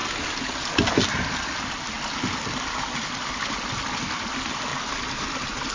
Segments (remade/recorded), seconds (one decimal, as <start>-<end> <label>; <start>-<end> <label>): 0.0-5.7 recorded